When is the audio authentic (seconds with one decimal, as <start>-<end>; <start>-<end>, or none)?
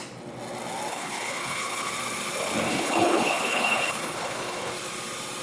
0.0-0.9; 1.9-2.7; 4.7-5.4